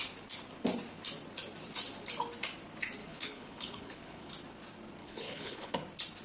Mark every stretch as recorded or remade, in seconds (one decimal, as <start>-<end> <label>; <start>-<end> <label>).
0.0-3.0 recorded; 3.0-4.3 remade; 4.3-5.0 recorded; 5.0-5.7 remade; 5.7-6.2 recorded